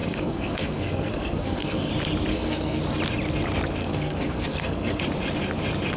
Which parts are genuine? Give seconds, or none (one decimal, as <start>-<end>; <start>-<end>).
1.9-2.3; 2.8-3.8; 5.0-6.0